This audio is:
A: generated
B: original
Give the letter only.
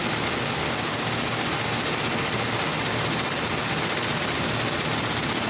B